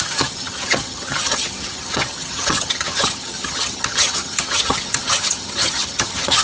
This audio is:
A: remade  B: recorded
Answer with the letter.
A